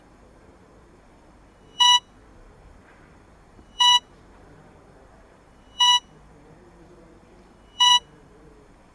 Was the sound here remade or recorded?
remade